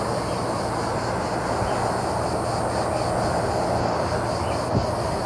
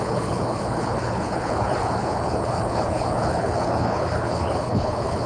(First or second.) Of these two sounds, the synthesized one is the second